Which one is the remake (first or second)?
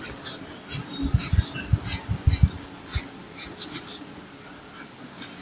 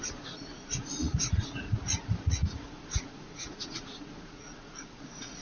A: second